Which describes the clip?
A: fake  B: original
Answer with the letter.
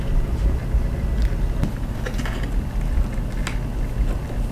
B